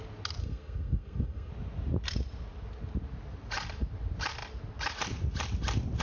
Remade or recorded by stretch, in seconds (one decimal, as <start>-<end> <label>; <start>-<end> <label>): 0.0-0.4 recorded; 0.4-1.5 remade; 1.5-6.0 recorded